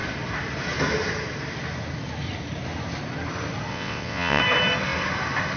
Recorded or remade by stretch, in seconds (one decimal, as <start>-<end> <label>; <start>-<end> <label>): 0.0-3.7 recorded; 3.7-4.4 remade; 4.4-5.6 recorded